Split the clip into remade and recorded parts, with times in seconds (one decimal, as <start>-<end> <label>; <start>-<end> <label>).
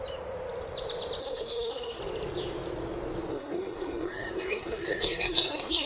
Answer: 0.0-1.2 recorded; 1.2-2.0 remade; 2.0-3.3 recorded; 3.3-5.9 remade